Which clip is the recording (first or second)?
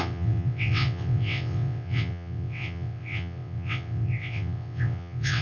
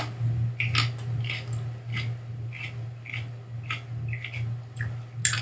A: second